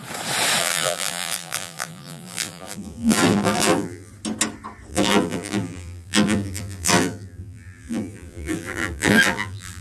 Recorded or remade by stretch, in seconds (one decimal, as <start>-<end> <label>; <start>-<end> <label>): 0.0-0.6 recorded; 0.6-4.1 remade; 4.1-4.9 recorded; 4.9-9.8 remade